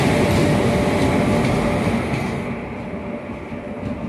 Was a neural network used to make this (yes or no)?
no